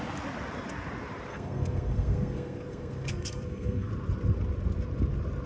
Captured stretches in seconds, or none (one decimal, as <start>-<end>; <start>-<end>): 0.0-1.3; 3.9-5.5

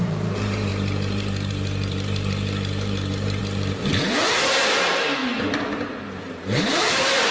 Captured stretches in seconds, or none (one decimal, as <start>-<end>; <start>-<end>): 5.2-6.2

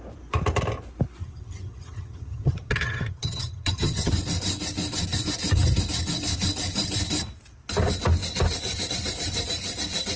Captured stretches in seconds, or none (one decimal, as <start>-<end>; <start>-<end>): 0.0-1.2; 4.1-10.2

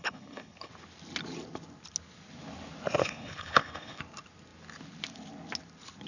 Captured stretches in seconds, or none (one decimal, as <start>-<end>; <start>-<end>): 0.7-3.0; 4.0-6.1

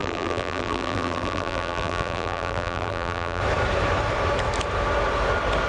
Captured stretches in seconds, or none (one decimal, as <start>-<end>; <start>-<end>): 3.4-5.7

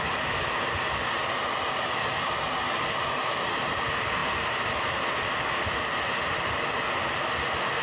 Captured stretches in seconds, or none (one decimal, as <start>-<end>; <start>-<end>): 0.0-7.8